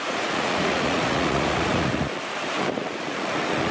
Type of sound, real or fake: fake